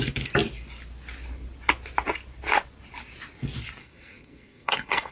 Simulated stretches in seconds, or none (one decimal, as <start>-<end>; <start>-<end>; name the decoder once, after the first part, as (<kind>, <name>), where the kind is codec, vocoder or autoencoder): 3.8-5.1 (codec, SNAC)